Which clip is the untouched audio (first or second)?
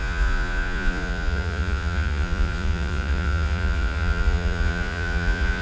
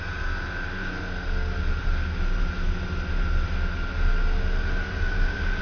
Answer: second